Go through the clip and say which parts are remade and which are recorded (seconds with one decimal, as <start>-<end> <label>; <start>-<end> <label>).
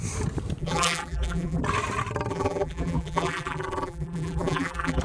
0.0-0.6 recorded; 0.6-1.6 remade; 1.6-2.3 recorded; 2.3-5.0 remade